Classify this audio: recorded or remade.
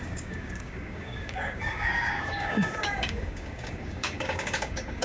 remade